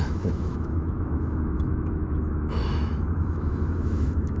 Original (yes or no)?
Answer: no